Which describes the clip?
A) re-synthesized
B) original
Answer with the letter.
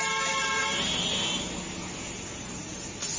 B